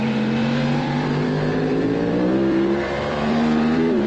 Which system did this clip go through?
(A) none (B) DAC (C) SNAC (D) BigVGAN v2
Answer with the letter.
D